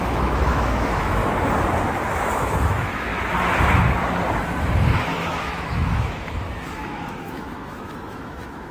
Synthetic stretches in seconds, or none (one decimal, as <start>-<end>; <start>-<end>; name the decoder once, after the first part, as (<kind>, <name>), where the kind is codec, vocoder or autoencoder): 0.0-1.2 (autoencoder, DAC-VAE); 2.1-3.1; 5.0-8.7